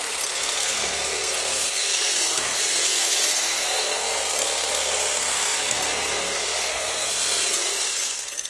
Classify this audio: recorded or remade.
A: remade